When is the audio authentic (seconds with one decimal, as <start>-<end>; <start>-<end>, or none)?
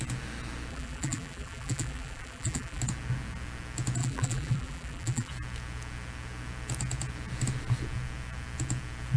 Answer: 0.0-0.7; 2.8-4.0; 5.3-9.2